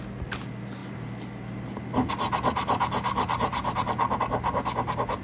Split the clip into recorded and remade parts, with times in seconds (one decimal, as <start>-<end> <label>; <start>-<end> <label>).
0.0-5.2 recorded